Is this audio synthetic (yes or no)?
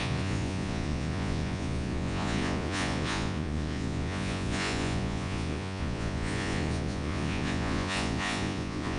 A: yes